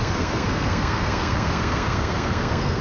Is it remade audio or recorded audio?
remade